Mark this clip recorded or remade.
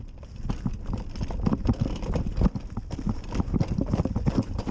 recorded